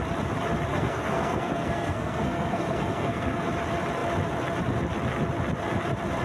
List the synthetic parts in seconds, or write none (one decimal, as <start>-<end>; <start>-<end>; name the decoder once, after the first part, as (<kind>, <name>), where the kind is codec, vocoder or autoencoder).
0.7-3.5 (codec, SNAC)

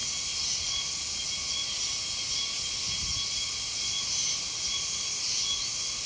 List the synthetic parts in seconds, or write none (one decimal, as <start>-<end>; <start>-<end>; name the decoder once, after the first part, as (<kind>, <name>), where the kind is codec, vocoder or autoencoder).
none

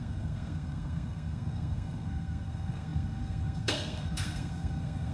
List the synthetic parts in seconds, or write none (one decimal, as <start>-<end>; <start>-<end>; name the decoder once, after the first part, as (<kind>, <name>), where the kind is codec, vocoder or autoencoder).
0.0-5.1 (codec, SNAC)

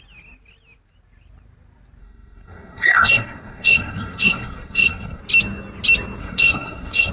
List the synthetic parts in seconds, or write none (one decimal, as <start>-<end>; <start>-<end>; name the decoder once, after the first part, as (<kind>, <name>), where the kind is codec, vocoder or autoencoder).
2.0-5.2 (codec, SNAC); 6.2-7.1

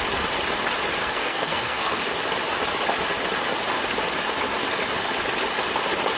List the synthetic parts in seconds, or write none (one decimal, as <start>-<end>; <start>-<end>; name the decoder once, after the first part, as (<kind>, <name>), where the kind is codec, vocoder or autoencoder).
1.0-2.0 (codec, SNAC)